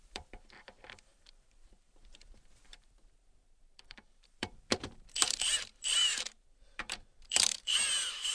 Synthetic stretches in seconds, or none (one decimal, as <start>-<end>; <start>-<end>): 0.0-8.3